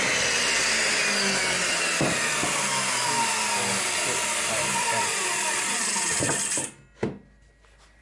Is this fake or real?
real